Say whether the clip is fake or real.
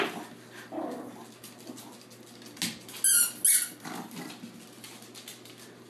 real